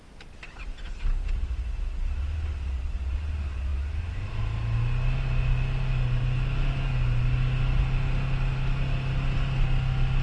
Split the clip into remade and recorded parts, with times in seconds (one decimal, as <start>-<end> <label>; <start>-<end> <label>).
0.0-10.2 recorded